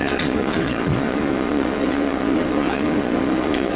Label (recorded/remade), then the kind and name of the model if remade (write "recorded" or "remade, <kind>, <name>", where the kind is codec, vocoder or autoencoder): remade, vocoder, Vocos